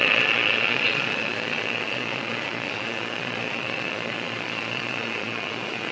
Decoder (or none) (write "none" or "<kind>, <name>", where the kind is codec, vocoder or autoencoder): vocoder, Vocos